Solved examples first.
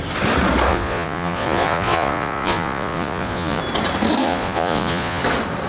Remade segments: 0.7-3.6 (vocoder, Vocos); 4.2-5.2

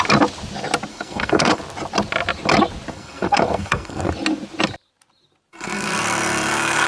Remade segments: 0.9-1.6 (codec, SNAC); 2.9-4.1; 5.5-6.9

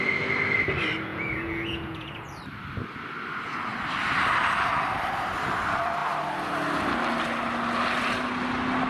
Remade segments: 1.1-2.4 (vocoder, Vocos)